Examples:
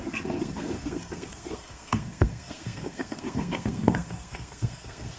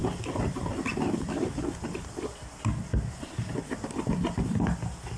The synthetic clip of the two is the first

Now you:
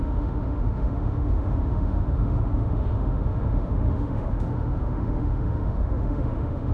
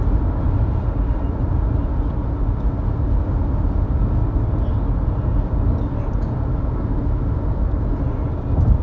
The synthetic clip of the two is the first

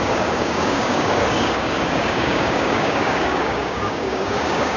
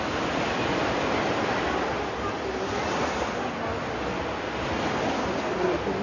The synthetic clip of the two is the first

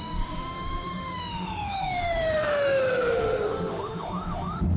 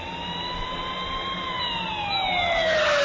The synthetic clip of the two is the first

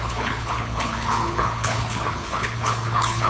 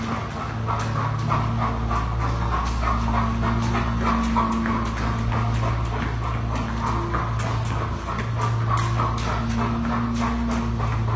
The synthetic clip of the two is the first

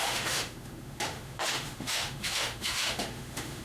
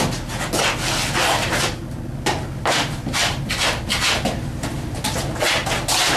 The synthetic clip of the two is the first